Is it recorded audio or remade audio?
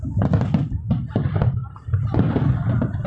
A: recorded